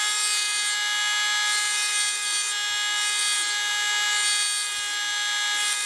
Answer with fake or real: real